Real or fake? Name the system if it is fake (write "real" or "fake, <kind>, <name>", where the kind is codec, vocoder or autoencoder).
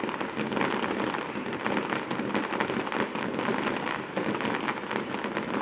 real